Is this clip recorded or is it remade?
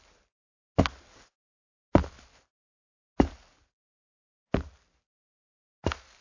recorded